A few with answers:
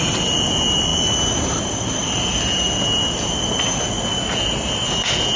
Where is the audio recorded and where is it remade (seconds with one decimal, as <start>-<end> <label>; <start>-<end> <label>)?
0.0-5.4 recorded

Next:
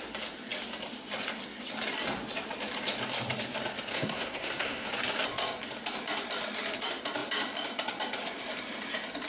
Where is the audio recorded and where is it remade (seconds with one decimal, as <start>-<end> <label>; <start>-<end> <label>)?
0.0-3.9 recorded; 3.9-4.9 remade; 4.9-9.3 recorded

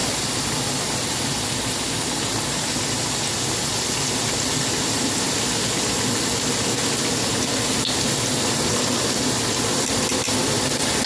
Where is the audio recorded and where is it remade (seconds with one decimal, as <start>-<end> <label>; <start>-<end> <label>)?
0.0-11.1 recorded